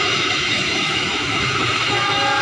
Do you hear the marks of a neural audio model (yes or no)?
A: yes